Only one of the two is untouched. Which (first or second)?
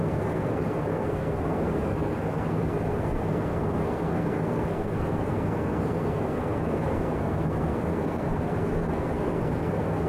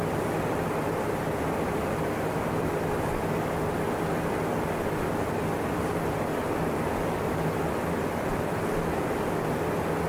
second